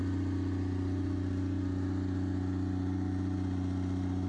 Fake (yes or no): no